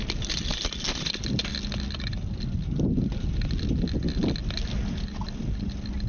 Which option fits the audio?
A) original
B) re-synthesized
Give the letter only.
A